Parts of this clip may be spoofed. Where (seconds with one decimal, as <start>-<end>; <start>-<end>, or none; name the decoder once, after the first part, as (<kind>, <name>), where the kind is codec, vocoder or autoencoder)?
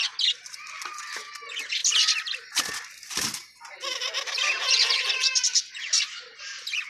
none